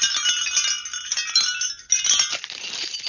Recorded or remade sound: recorded